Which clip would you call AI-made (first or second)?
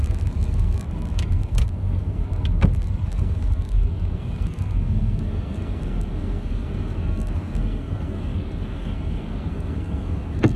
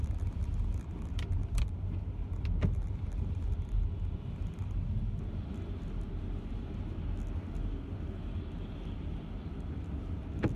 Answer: first